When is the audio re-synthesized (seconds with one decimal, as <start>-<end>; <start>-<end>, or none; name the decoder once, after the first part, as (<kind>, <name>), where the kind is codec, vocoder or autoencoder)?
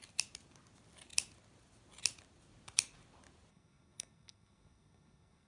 3.5-5.5 (codec, SNAC)